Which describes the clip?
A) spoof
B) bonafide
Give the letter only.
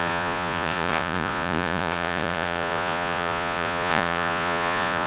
A